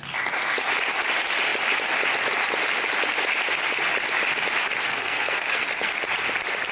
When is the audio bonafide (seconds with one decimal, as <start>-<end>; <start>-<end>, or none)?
0.0-4.9; 5.9-6.7